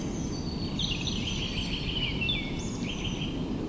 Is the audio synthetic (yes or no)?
no